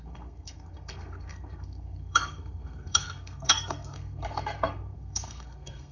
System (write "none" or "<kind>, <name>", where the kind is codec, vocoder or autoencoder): codec, SNAC